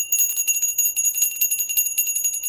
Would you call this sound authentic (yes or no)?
no